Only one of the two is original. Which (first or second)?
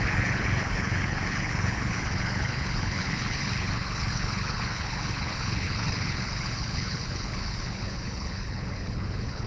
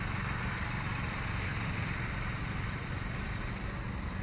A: second